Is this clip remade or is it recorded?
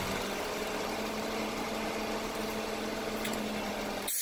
recorded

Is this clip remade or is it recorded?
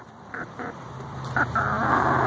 remade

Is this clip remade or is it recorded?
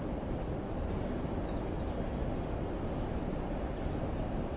recorded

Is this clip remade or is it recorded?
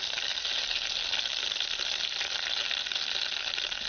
recorded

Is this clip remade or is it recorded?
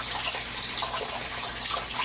remade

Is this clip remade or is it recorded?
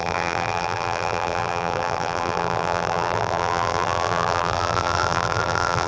remade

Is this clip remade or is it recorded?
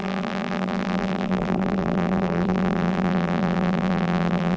remade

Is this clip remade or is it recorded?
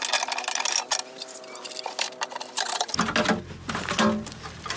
recorded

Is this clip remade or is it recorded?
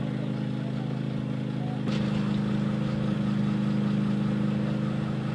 recorded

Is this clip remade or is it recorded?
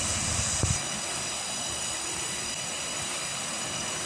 recorded